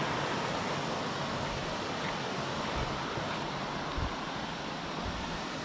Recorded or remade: recorded